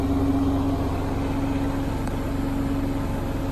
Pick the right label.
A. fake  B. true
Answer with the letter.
B